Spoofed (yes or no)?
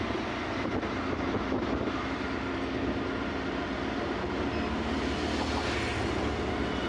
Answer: no